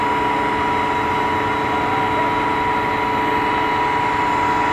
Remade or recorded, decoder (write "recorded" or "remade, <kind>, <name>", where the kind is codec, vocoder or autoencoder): recorded